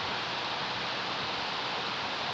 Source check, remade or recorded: recorded